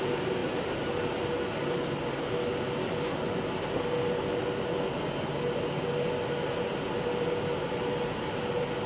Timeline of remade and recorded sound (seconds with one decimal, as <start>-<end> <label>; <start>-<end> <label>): 0.0-8.9 recorded